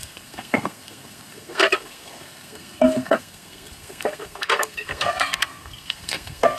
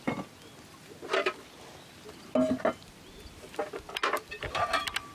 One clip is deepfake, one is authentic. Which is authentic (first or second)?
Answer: second